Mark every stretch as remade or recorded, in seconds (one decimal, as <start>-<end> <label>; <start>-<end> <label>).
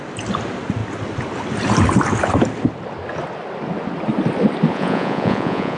0.0-4.7 recorded; 4.7-5.8 remade